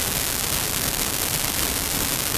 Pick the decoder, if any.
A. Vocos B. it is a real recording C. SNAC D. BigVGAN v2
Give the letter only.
B